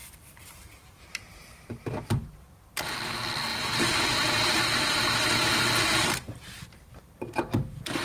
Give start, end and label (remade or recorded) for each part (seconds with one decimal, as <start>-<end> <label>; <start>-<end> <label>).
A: 0.0-1.8 remade; 1.8-3.5 recorded; 3.5-6.9 remade; 6.9-8.0 recorded